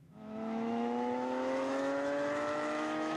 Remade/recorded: remade